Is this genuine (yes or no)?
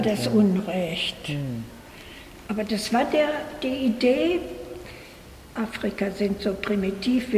yes